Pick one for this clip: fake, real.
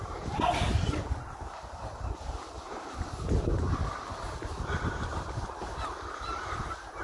fake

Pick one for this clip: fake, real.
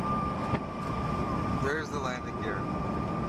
fake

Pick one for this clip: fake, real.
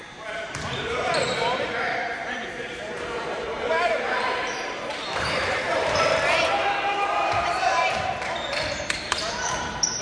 fake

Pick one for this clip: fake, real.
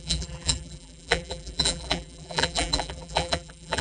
fake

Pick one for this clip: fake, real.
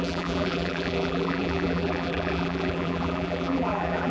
fake